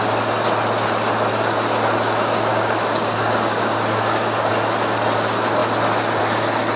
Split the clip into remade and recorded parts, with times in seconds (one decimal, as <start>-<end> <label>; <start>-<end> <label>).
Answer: 0.0-2.5 recorded; 2.5-4.5 remade; 4.5-6.8 recorded